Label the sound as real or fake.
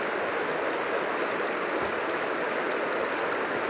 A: real